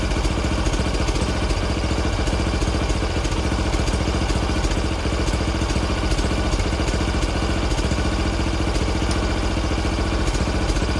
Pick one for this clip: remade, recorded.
recorded